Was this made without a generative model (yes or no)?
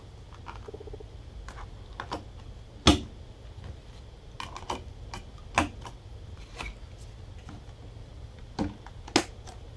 yes